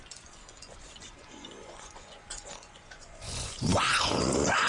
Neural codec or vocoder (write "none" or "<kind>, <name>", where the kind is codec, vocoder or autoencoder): vocoder, Vocos